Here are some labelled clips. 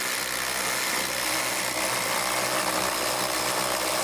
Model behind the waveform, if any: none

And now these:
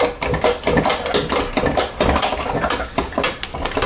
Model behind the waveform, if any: none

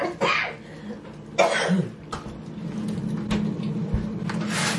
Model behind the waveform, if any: none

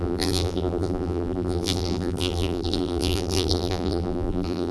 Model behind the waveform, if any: vocoder, BigVGAN v2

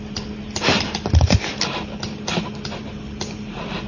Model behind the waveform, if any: none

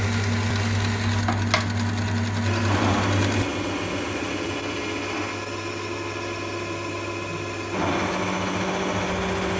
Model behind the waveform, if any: none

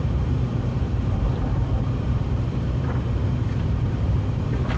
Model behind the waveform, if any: vocoder, BigVGAN v2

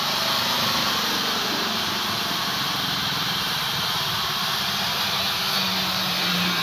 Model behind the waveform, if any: vocoder, BigVGAN v2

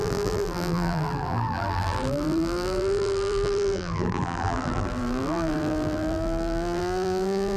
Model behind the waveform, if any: vocoder, BigVGAN v2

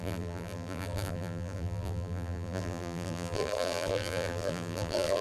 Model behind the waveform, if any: vocoder, BigVGAN v2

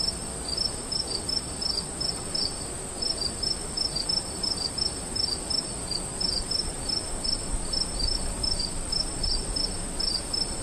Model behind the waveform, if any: none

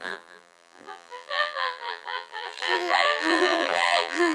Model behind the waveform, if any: vocoder, BigVGAN v2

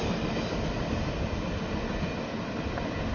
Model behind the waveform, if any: none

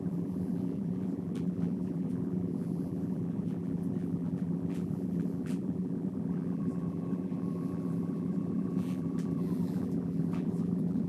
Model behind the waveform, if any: vocoder, BigVGAN v2